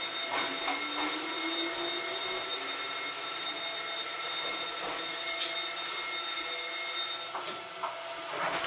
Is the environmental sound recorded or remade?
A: recorded